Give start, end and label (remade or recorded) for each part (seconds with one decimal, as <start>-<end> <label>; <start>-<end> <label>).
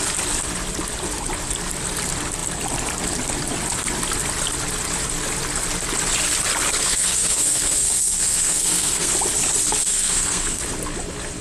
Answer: 0.0-6.8 recorded; 6.8-9.1 remade; 9.1-9.8 recorded; 9.8-10.6 remade; 10.6-11.4 recorded